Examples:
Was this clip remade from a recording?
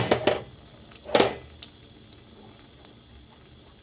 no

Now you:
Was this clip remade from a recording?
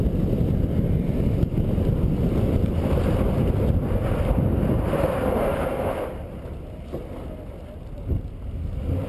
no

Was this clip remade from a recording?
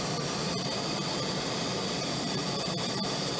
no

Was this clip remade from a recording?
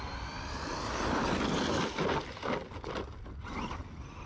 no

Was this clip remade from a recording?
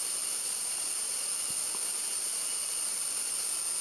no